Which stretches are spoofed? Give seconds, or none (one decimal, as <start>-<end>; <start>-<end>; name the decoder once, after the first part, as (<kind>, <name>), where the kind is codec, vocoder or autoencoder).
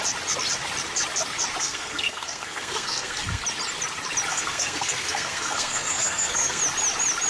1.6-3.4 (codec, SNAC); 4.3-6.6